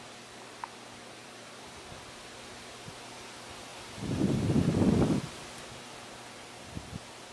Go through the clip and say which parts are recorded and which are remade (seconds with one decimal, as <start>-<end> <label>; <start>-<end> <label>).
0.0-1.2 recorded; 1.2-1.7 remade; 1.7-7.3 recorded